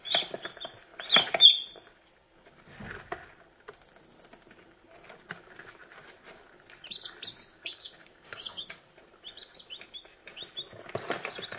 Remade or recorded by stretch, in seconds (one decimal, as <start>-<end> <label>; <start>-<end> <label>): 0.0-7.5 recorded; 7.5-8.8 remade; 8.8-11.6 recorded

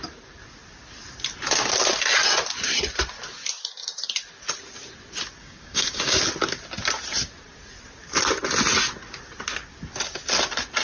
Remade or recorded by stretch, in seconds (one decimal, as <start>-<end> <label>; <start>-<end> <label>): 0.0-5.4 recorded; 5.4-6.2 remade; 6.2-10.8 recorded

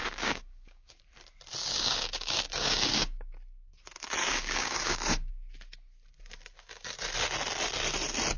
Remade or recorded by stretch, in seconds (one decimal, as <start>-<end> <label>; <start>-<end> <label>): 0.0-1.0 remade; 1.0-1.6 recorded; 1.6-3.3 remade; 3.3-4.2 recorded; 4.2-5.3 remade; 5.3-8.4 recorded